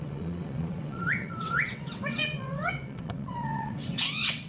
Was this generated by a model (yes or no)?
yes